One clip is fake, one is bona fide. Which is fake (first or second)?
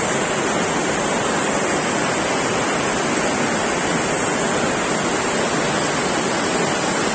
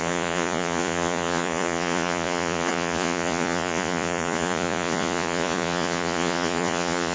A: second